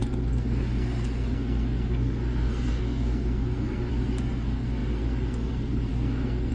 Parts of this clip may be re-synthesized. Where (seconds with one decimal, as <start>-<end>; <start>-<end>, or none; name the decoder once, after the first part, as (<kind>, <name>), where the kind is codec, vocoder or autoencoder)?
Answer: 0.0-6.5 (codec, SNAC)

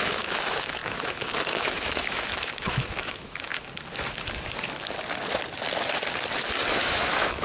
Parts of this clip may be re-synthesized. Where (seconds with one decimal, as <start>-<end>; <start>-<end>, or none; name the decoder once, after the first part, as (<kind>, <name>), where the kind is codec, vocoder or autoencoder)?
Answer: 0.0-3.5 (autoencoder, DAC-VAE); 6.8-7.4

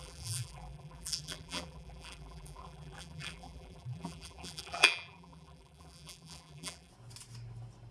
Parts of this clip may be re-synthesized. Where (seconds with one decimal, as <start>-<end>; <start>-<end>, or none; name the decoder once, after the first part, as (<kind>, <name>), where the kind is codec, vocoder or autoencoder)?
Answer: 0.0-6.9 (vocoder, BigVGAN v2)

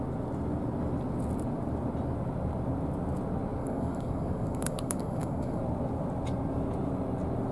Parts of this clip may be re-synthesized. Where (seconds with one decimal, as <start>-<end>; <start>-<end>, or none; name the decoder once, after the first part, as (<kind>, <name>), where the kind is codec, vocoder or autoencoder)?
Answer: 3.6-5.6 (codec, DAC)

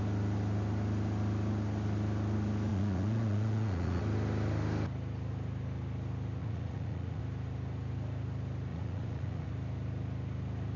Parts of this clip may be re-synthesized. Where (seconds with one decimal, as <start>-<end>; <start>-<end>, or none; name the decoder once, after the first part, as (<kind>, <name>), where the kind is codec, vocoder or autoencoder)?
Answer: 2.7-4.0 (vocoder, Vocos); 6.4-7.2; 8.7-9.5

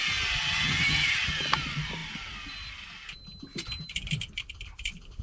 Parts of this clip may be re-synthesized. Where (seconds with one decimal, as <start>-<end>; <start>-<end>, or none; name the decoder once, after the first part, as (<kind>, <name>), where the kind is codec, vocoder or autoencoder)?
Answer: 0.4-1.3 (vocoder, HiFi-GAN)